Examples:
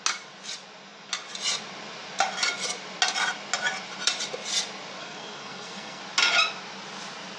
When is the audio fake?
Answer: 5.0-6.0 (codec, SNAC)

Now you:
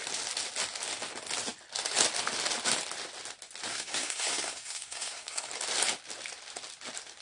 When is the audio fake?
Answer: 3.7-5.5 (codec, SNAC)

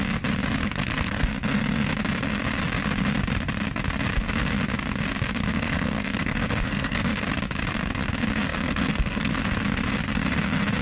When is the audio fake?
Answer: 0.6-1.2 (codec, SNAC); 5.5-7.0; 8.5-9.4

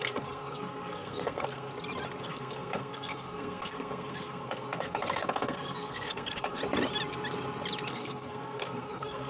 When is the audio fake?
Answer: 0.0-1.7 (codec, SNAC); 2.2-6.6; 7.9-9.3

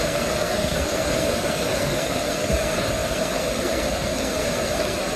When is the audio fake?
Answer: 0.0-5.2 (codec, SNAC)

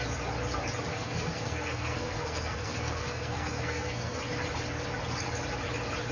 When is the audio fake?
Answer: 0.9-4.2 (codec, SNAC)

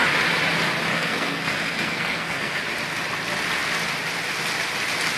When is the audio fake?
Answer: 0.9-2.6 (codec, SNAC)

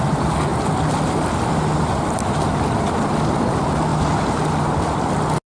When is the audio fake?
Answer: none